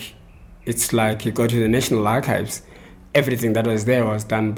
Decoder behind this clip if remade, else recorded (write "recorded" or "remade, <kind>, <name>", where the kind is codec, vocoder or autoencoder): remade, vocoder, BigVGAN v2